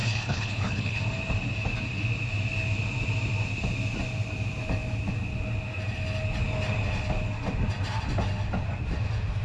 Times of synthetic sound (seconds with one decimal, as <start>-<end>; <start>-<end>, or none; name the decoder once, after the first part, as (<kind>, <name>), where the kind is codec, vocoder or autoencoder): 0.0-1.0 (codec, HILCodec)